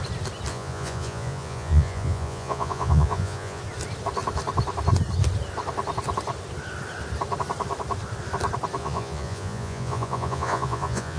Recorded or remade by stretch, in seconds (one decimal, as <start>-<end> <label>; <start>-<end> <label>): 0.0-0.5 recorded; 0.5-3.6 remade; 3.6-8.8 recorded; 8.8-11.2 remade